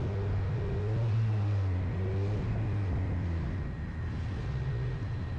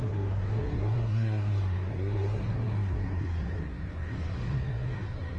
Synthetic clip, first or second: second